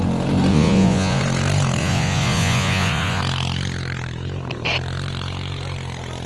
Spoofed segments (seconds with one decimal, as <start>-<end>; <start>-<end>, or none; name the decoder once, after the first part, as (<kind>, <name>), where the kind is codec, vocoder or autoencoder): 0.5-1.2 (vocoder, Vocos); 1.8-3.2